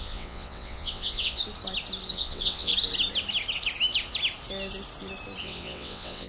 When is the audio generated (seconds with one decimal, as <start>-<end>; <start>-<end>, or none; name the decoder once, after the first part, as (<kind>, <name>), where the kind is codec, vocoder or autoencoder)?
0.0-1.4 (vocoder, WaveNeXt); 2.1-2.7; 5.4-6.3